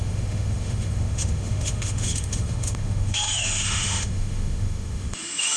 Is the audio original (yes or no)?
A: no